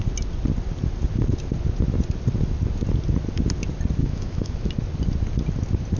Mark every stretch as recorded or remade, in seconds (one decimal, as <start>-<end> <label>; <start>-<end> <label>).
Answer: 0.0-4.0 recorded; 4.0-4.7 remade; 4.7-6.0 recorded